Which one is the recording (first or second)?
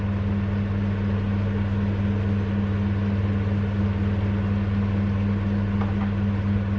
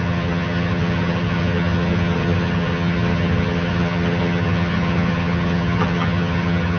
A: first